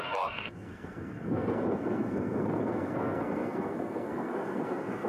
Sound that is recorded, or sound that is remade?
remade